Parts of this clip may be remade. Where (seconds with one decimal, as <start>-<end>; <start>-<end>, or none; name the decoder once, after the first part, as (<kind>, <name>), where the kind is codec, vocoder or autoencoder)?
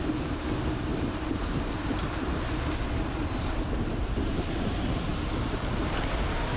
0.0-5.1 (vocoder, BigVGAN v2); 5.7-6.6